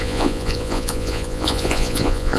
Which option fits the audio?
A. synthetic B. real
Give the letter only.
A